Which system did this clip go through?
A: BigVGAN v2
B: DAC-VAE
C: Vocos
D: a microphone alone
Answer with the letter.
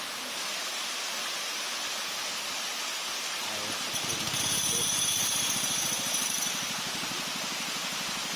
A